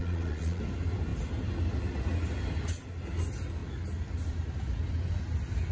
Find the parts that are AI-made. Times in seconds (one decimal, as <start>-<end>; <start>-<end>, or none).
0.0-0.6